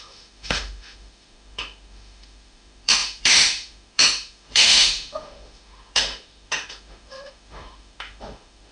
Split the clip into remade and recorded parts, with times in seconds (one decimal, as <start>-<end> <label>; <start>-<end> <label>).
0.0-8.7 remade

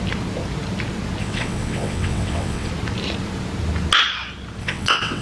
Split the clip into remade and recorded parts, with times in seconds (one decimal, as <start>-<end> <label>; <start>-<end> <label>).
0.0-1.2 recorded; 1.2-2.7 remade; 2.7-4.6 recorded; 4.6-5.2 remade